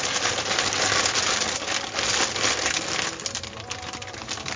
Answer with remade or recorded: recorded